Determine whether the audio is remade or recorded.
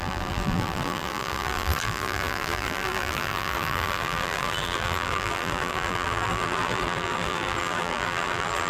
remade